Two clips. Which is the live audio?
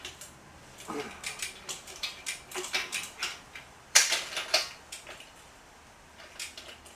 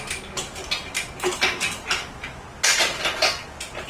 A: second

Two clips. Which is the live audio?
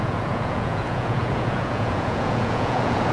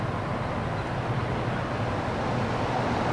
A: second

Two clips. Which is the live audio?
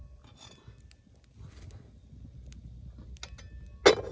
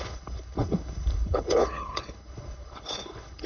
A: first